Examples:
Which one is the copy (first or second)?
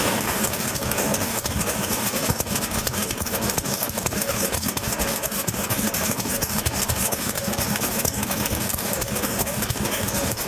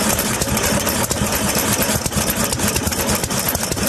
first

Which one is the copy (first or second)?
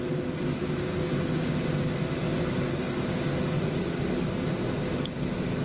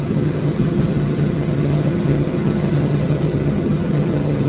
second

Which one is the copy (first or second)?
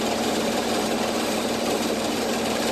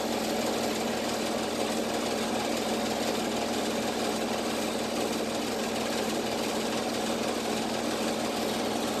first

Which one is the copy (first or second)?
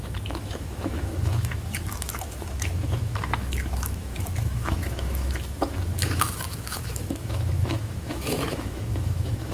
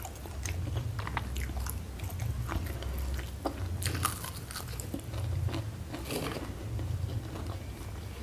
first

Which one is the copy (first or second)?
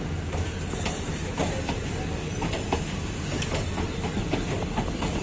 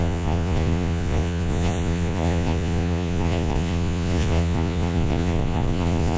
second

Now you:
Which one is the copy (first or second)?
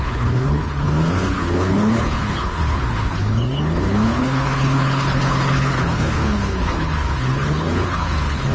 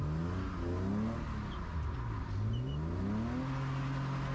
first